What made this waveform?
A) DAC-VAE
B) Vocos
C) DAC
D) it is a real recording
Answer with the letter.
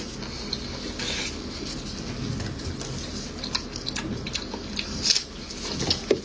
D